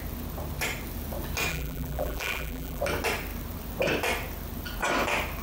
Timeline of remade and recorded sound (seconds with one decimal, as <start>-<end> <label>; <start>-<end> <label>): 0.0-1.5 recorded; 1.5-2.8 remade; 2.8-5.4 recorded